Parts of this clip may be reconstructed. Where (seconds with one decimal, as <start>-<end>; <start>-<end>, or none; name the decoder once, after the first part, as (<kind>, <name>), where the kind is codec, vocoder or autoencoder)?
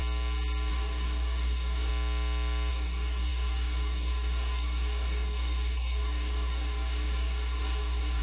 0.7-1.9 (codec, DAC); 2.7-8.2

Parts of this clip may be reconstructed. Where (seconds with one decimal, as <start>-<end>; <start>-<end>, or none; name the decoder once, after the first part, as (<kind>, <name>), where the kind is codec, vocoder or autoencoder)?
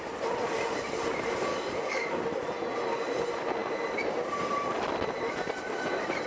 1.5-2.2 (codec, DAC)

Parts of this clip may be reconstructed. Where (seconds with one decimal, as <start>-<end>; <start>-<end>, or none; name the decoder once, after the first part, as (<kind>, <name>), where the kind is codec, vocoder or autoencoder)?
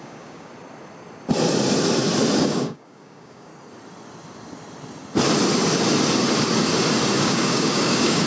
0.0-0.5 (codec, DAC); 2.4-3.5; 7.2-8.3